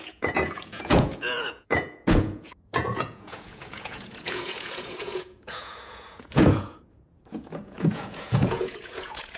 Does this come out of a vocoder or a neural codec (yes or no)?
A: yes